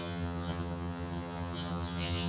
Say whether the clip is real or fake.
fake